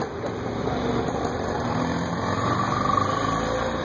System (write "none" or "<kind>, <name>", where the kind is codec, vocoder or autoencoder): none